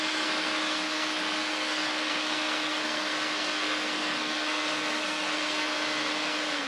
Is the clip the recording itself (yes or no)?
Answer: no